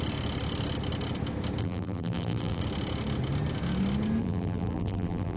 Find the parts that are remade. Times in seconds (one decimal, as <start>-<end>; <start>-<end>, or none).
1.6-2.6; 4.2-5.4